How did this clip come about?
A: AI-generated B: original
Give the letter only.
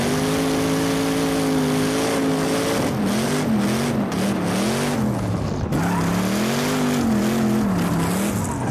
B